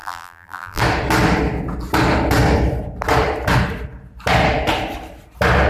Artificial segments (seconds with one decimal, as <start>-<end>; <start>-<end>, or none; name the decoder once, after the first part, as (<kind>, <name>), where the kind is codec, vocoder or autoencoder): 0.0-0.8 (vocoder, BigVGAN v2)